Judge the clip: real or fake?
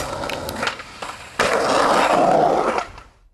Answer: real